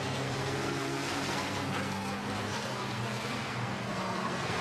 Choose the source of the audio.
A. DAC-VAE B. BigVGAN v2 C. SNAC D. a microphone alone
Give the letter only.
C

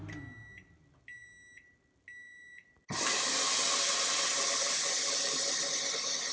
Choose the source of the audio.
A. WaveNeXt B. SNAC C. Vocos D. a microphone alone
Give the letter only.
D